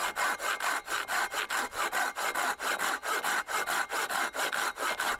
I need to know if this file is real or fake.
real